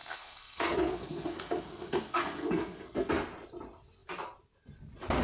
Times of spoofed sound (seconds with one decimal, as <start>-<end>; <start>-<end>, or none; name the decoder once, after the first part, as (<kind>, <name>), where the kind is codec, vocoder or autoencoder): 0.0-3.1 (codec, SNAC)